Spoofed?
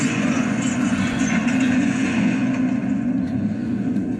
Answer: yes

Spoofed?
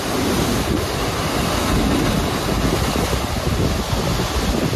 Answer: no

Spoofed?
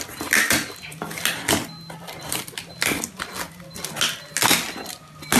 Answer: no